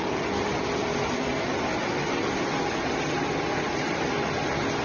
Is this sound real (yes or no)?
yes